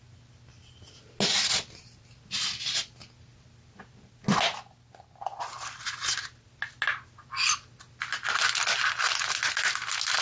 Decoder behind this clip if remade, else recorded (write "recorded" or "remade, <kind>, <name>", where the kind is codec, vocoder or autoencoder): recorded